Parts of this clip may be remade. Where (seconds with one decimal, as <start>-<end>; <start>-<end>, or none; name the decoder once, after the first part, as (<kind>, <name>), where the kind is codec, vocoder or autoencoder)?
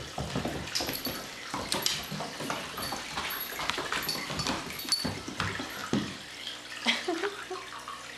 none